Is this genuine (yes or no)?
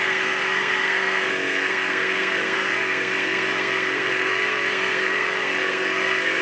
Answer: no